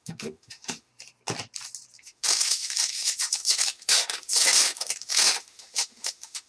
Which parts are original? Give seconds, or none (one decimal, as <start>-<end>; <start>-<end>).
0.9-2.0